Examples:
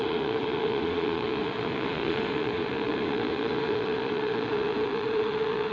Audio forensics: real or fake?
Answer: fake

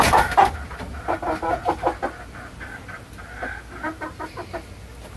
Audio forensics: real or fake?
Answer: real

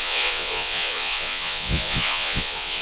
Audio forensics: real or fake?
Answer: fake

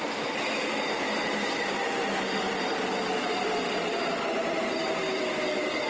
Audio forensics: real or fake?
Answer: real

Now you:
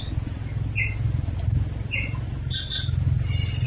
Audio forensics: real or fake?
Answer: real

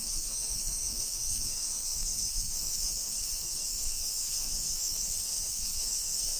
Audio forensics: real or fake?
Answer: fake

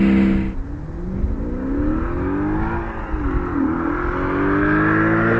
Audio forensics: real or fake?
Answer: real